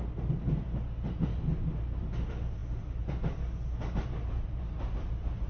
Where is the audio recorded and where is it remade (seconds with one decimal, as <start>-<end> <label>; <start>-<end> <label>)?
0.0-5.5 recorded